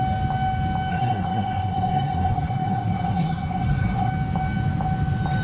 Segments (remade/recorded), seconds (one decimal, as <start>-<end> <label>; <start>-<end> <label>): 0.0-0.9 recorded; 0.9-4.1 remade; 4.1-5.4 recorded